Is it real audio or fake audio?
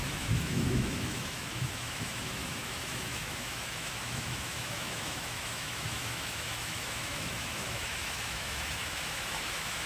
fake